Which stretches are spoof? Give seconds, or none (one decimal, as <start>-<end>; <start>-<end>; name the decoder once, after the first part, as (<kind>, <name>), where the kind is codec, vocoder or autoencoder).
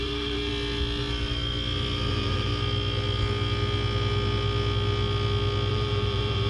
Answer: 0.0-0.5 (vocoder, BigVGAN v2); 2.1-2.5; 5.7-6.5